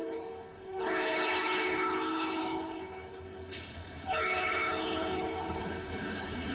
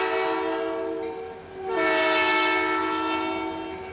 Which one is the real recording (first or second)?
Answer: second